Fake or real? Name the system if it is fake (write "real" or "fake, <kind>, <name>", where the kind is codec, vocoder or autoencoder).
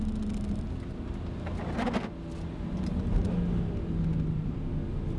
real